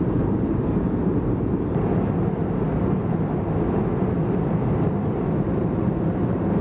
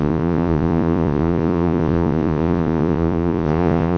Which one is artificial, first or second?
second